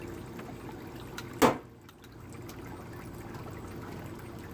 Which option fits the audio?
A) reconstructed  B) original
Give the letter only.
B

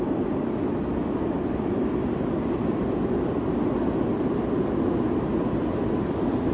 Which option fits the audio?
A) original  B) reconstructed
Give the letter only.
A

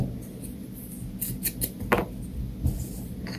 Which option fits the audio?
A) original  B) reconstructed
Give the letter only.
A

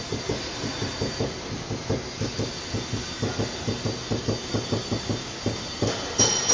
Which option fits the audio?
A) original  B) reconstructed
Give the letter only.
A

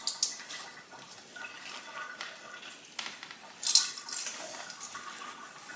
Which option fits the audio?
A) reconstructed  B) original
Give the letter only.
B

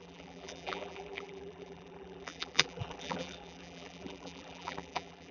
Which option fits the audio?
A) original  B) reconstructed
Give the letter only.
B